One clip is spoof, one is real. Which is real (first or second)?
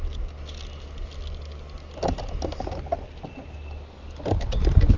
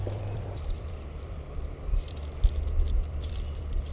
first